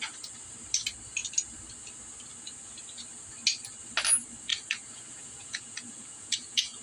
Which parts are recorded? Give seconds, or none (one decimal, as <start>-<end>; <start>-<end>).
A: 0.0-4.5